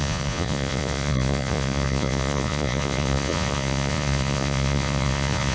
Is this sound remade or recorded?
remade